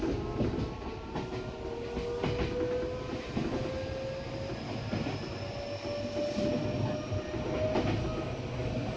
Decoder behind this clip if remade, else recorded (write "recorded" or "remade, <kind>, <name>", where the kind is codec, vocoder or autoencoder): recorded